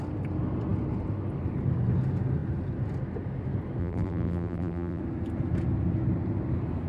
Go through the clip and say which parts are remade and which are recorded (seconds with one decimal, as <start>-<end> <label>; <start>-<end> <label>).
0.0-3.8 recorded; 3.8-5.0 remade; 5.0-6.9 recorded